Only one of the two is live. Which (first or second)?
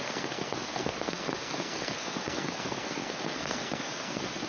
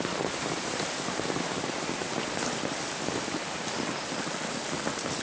second